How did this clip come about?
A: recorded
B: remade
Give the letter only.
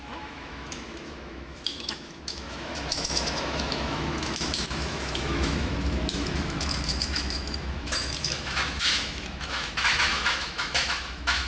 B